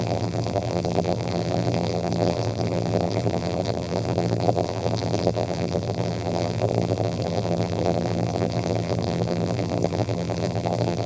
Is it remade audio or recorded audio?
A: remade